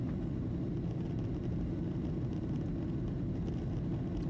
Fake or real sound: real